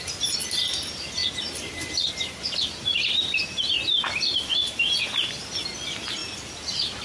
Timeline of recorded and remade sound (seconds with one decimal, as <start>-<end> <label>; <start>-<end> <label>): 0.0-7.0 recorded